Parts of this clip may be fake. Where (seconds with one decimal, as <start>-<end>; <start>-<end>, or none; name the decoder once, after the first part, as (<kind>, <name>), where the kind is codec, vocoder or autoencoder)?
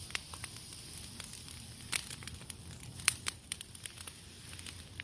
0.7-3.4 (vocoder, BigVGAN v2)